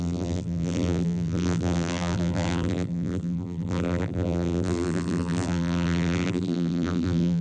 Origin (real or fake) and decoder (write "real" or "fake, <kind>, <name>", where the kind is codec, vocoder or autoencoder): fake, vocoder, BigVGAN v2